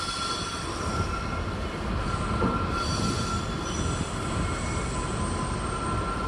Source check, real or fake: real